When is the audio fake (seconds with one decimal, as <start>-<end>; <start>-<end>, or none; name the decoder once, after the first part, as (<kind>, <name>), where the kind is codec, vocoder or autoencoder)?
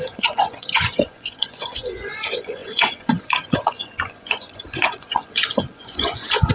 0.0-6.5 (vocoder, Vocos)